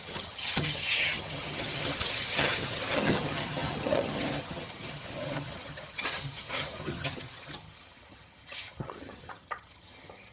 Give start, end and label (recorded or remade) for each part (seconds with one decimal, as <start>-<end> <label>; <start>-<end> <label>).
0.0-10.3 remade